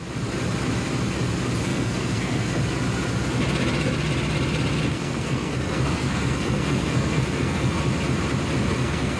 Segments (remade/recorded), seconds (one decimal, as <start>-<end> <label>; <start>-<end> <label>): 0.0-1.7 recorded; 1.7-2.6 remade; 2.6-4.9 recorded; 4.9-7.8 remade; 7.8-8.6 recorded; 8.6-9.2 remade